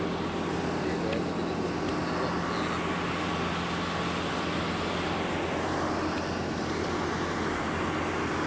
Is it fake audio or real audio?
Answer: real